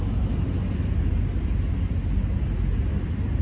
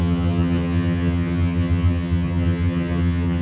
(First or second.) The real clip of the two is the first